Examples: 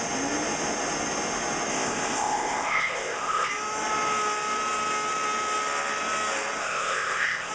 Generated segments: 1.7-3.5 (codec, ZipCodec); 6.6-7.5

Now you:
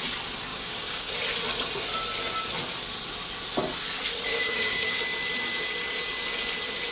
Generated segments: 0.5-1.1 (codec, DAC); 4.3-5.0

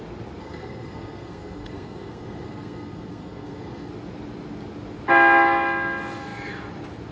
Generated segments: 0.4-3.9 (codec, SNAC)

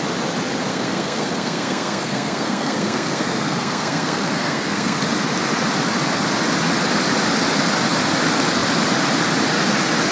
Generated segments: 0.7-5.0 (codec, SNAC)

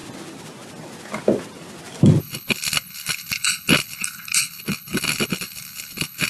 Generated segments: 2.2-6.3 (codec, HILCodec)

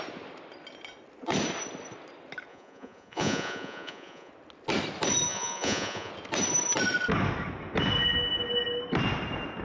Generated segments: 2.5-4.3 (vocoder, Vocos); 5.3-6.1